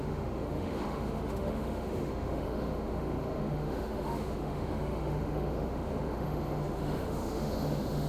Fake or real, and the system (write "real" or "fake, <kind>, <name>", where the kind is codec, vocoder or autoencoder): fake, autoencoder, DAC-VAE